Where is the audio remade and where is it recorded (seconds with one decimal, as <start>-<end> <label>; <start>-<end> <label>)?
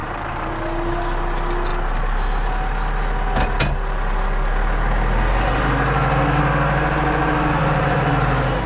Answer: 0.0-0.5 remade; 0.5-7.6 recorded; 7.6-8.7 remade